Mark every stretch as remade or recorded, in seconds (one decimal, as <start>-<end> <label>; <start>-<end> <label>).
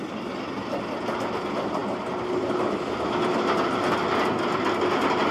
0.0-5.3 recorded